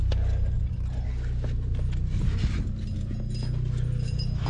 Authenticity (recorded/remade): recorded